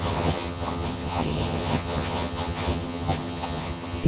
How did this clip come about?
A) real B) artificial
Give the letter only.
B